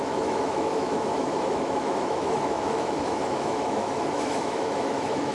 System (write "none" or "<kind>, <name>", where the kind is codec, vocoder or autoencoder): autoencoder, DAC-VAE